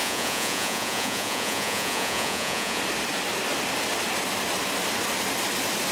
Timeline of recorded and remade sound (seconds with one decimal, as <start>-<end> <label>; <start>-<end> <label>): 0.0-2.8 remade; 2.8-5.9 recorded